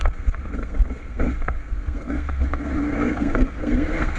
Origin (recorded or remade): remade